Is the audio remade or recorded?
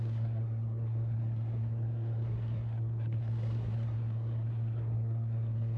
remade